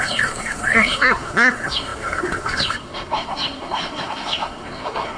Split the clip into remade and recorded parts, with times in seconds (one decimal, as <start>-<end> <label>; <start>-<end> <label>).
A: 0.0-5.2 remade